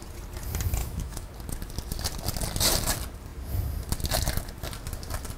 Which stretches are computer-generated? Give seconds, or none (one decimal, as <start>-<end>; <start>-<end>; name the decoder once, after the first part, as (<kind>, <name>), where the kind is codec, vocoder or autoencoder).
0.8-1.3 (autoencoder, DAC-VAE)

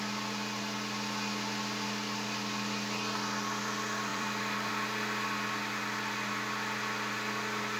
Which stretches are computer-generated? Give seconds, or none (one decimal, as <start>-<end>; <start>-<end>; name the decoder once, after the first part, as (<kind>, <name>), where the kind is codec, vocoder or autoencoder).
4.1-4.7 (vocoder, BigVGAN v2)

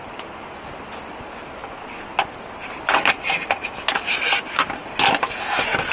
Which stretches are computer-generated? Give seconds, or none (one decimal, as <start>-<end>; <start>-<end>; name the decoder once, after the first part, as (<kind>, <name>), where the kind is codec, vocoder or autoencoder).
none

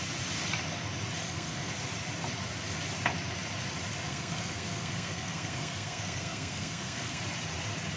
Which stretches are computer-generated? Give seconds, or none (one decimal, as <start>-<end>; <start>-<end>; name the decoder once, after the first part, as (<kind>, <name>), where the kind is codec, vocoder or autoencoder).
1.2-1.7 (codec, SNAC); 4.1-7.2

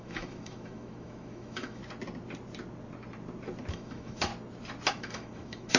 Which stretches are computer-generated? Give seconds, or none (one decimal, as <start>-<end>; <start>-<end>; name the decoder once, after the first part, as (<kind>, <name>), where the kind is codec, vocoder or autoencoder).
0.0-1.8 (autoencoder, DAC-VAE); 3.7-4.3; 4.9-5.8

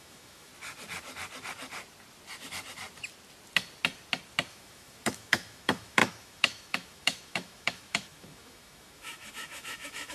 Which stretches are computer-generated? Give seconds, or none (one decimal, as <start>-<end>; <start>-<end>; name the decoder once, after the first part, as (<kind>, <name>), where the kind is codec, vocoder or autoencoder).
0.0-0.5 (autoencoder, DAC-VAE); 4.5-10.1

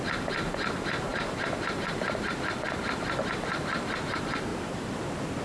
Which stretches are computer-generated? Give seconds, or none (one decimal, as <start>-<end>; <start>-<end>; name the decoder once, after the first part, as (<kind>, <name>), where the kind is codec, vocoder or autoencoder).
1.1-2.3 (vocoder, BigVGAN v2); 4.5-5.0